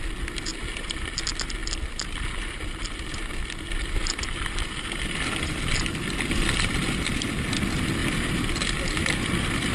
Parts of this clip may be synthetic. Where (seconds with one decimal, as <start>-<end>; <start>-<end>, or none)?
0.5-1.2; 1.6-3.0; 4.0-7.3; 8.0-9.7

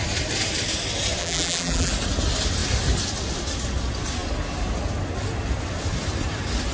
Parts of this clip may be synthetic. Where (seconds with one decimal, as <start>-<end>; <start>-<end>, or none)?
1.2-1.9